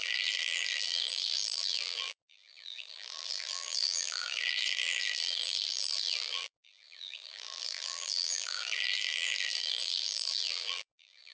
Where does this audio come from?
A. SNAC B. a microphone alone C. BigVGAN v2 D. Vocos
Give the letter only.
C